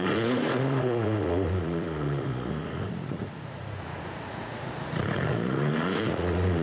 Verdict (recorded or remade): remade